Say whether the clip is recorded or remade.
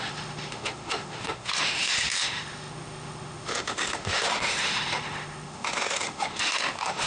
remade